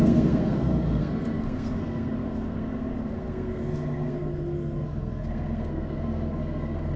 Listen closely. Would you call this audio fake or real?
fake